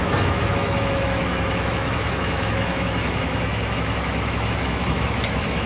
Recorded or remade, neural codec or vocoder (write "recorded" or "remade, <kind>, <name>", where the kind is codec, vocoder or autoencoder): remade, autoencoder, DAC-VAE